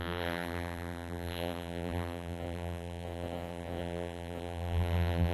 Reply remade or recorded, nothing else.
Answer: remade